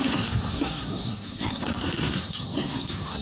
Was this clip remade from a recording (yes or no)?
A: yes